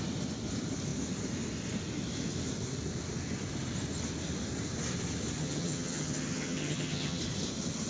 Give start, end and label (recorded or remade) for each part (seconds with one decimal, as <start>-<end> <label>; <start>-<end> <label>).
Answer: 0.0-5.4 recorded; 5.4-7.2 remade; 7.2-7.9 recorded